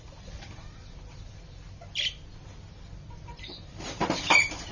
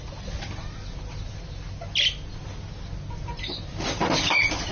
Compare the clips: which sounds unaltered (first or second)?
second